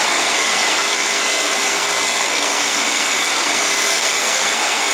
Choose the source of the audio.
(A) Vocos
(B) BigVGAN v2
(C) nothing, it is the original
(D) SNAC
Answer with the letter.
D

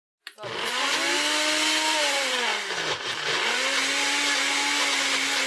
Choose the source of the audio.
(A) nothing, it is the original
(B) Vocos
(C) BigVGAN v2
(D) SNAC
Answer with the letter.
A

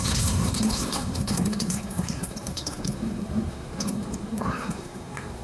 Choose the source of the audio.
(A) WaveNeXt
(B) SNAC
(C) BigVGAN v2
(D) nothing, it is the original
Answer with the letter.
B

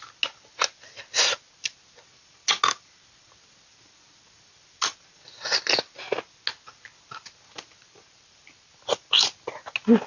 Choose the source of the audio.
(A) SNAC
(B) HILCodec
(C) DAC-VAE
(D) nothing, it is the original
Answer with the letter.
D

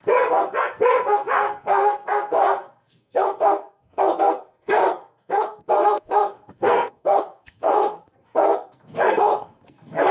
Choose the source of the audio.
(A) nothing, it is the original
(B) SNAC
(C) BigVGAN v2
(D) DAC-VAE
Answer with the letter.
B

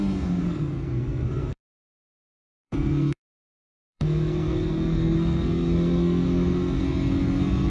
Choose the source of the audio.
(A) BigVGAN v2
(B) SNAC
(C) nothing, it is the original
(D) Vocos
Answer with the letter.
B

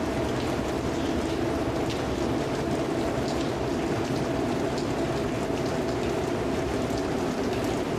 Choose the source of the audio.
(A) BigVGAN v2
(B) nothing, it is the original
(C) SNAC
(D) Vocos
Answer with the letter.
B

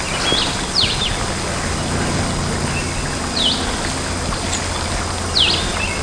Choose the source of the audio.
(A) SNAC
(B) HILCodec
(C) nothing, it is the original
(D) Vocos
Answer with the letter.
C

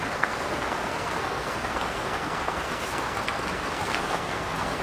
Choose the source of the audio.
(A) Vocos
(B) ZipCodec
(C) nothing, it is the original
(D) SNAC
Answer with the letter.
D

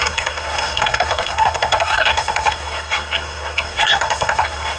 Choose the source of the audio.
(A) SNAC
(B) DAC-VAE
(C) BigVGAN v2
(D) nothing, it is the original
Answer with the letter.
A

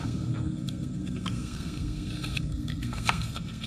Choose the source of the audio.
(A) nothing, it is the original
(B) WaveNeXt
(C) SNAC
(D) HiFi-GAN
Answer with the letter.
C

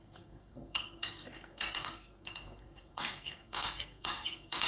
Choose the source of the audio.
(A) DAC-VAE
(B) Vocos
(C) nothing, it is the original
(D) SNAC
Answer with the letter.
D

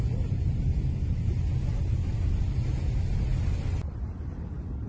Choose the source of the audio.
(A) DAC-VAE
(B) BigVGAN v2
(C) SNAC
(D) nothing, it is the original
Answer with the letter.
D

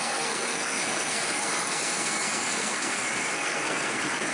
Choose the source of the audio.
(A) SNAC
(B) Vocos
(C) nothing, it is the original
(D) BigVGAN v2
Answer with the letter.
A